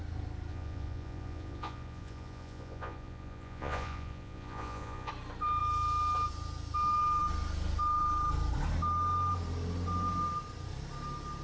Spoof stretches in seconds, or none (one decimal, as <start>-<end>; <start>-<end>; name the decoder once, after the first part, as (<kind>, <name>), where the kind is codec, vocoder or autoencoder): 0.5-5.1 (vocoder, Vocos)